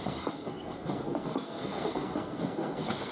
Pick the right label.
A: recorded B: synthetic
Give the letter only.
B